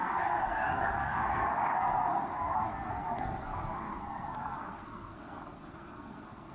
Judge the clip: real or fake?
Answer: fake